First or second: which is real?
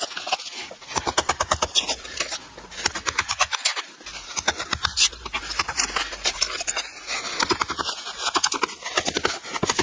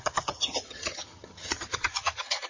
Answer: first